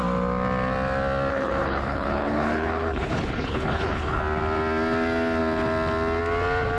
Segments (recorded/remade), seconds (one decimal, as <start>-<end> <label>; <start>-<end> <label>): 0.0-1.3 recorded; 1.3-4.2 remade; 4.2-6.8 recorded